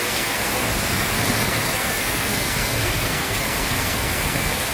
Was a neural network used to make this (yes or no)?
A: yes